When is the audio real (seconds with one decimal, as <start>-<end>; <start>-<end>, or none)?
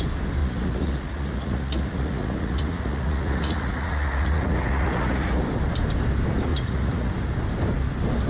0.0-0.4; 5.4-6.5; 7.1-8.3